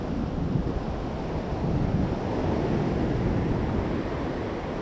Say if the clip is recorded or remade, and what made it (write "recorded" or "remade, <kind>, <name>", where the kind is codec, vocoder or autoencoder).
recorded